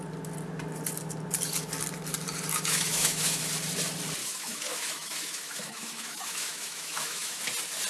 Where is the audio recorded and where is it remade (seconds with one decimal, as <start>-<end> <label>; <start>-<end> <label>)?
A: 0.0-2.5 recorded; 2.5-3.4 remade; 3.4-4.2 recorded; 4.2-7.4 remade; 7.4-7.9 recorded